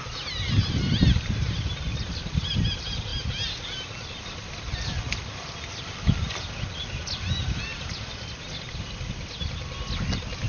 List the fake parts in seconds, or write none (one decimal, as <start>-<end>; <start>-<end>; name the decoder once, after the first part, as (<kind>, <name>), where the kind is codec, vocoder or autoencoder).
none